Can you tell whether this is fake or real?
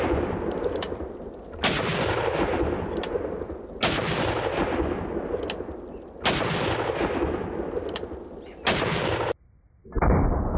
real